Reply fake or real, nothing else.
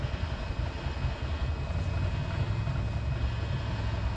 real